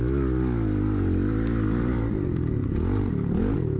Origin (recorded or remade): recorded